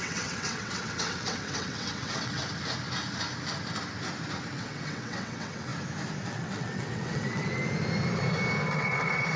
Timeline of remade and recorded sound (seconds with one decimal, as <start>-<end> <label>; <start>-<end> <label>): 0.0-2.4 remade; 2.4-4.6 recorded; 4.6-5.7 remade; 5.7-6.3 recorded; 6.3-7.6 remade; 7.6-8.7 recorded; 8.7-9.4 remade